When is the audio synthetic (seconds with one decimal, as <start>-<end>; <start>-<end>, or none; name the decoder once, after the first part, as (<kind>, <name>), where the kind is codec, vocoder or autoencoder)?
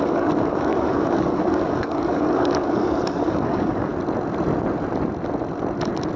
0.0-3.9 (codec, DAC)